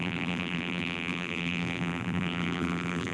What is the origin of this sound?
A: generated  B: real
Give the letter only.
A